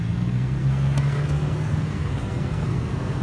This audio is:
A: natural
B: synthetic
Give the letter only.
B